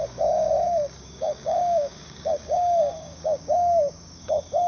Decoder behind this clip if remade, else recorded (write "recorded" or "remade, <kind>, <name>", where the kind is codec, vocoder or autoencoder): remade, codec, DAC